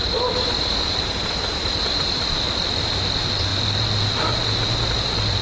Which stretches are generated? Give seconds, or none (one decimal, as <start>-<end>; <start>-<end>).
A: 0.8-5.4